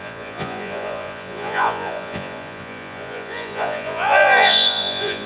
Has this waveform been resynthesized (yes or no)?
yes